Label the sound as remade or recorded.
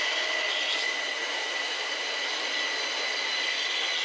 recorded